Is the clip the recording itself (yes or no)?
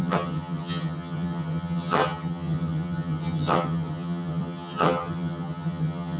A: no